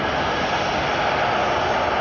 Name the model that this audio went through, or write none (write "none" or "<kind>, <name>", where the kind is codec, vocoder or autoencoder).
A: none